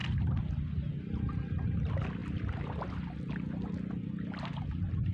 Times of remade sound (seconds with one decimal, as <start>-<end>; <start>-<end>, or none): none